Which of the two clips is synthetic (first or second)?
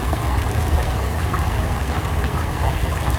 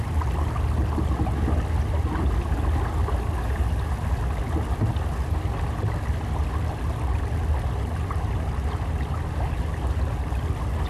first